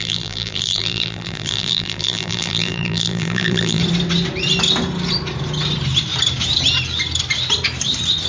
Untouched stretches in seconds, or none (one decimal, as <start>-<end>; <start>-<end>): 3.8-8.3